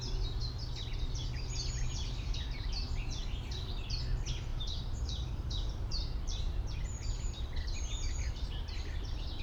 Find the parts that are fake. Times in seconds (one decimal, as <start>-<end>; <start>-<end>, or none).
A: 4.5-8.4